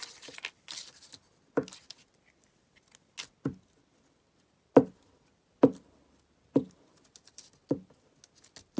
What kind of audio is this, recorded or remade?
recorded